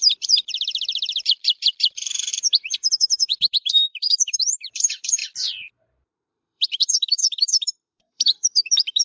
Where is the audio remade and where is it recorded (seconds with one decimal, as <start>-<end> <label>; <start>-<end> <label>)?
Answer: 0.0-5.2 remade; 5.2-5.7 recorded; 5.7-9.0 remade